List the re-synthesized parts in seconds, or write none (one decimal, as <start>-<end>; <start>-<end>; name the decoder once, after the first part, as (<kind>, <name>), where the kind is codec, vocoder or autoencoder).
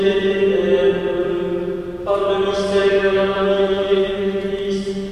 3.0-4.4 (codec, SNAC)